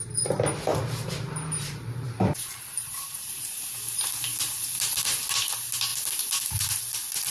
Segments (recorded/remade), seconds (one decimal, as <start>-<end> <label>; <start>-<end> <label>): 0.0-0.7 recorded; 0.7-5.1 remade; 5.1-5.9 recorded; 5.9-6.8 remade; 6.8-7.3 recorded